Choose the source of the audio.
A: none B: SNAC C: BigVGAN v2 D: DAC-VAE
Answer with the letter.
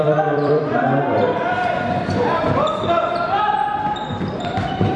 C